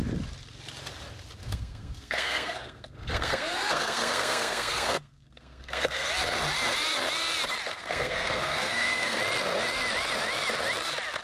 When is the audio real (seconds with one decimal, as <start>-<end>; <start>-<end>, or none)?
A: 0.0-1.4; 6.1-7.7; 9.2-11.2